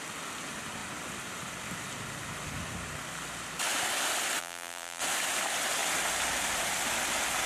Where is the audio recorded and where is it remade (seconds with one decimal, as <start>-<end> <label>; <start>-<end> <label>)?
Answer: 0.0-4.4 recorded; 4.4-5.0 remade; 5.0-7.5 recorded